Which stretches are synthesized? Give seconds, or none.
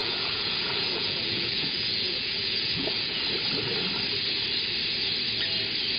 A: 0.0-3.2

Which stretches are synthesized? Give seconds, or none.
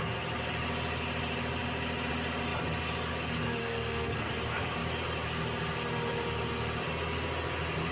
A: 3.6-4.3